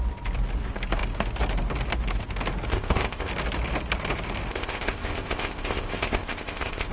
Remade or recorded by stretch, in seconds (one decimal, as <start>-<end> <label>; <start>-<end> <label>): 0.0-2.7 recorded; 2.7-3.3 remade; 3.3-4.5 recorded; 4.5-6.9 remade